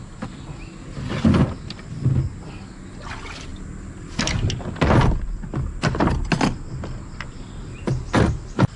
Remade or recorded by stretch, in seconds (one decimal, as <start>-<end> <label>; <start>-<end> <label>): 0.0-8.8 recorded